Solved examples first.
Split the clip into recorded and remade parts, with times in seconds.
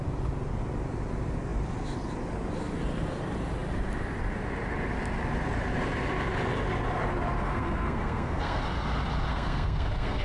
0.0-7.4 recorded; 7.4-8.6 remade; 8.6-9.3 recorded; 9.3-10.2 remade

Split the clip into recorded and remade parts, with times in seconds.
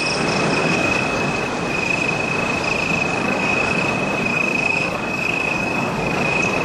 0.0-0.6 recorded; 0.6-1.3 remade; 1.3-3.1 recorded; 3.1-3.8 remade; 3.8-4.3 recorded; 4.3-6.6 remade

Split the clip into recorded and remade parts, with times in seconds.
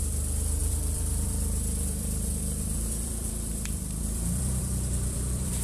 0.0-5.6 remade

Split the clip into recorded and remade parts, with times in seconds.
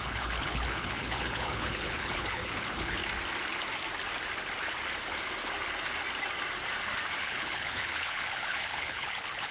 0.0-3.0 remade; 3.0-7.2 recorded; 7.2-9.5 remade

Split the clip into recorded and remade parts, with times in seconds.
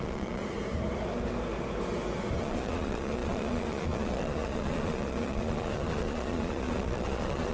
0.0-0.4 remade; 0.4-2.4 recorded; 2.4-7.5 remade